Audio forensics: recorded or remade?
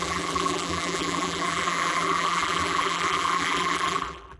remade